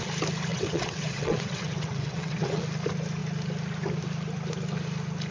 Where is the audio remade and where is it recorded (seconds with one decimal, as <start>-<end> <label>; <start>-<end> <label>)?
0.0-0.5 recorded; 0.5-2.6 remade; 2.6-5.3 recorded